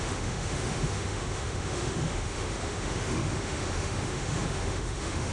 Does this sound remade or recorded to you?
remade